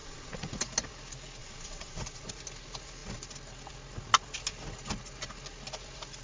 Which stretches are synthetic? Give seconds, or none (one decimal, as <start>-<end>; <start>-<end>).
0.0-0.6; 1.4-2.3